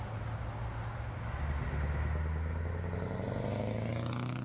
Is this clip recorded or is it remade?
recorded